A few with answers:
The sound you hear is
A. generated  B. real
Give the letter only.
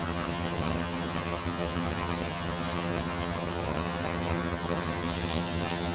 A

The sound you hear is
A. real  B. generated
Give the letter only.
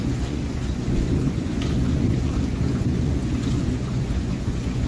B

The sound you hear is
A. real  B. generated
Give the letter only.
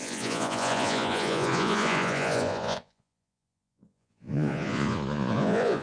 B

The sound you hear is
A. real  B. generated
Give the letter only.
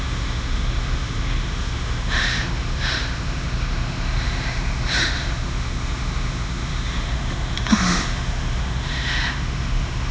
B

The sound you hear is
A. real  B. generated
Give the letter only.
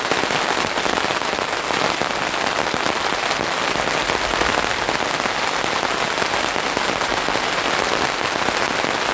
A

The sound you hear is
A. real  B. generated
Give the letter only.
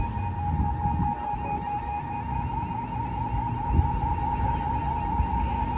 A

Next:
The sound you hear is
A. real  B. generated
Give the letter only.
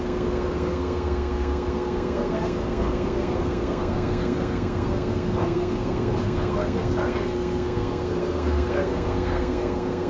B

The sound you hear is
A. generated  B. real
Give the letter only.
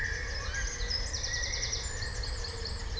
B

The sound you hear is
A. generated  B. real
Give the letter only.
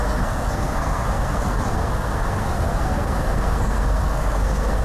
A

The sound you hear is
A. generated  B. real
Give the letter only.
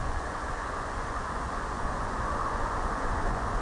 A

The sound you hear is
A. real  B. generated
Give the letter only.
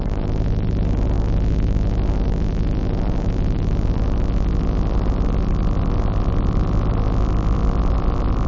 A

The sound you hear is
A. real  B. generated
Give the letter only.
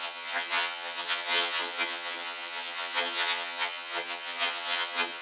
B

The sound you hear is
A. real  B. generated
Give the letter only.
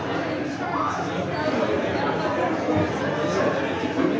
A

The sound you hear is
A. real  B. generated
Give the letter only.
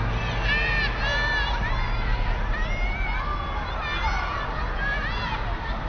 A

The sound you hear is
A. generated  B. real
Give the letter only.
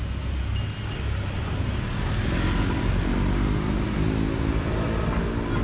B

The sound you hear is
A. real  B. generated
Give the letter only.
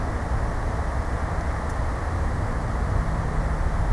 A